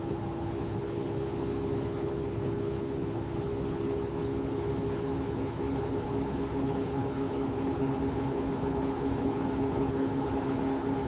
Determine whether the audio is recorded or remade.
remade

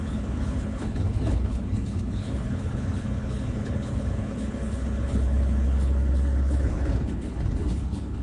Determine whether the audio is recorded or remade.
remade